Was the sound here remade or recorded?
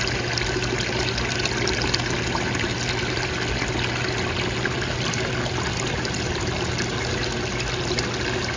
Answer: recorded